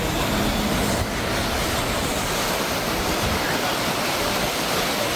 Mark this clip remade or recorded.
recorded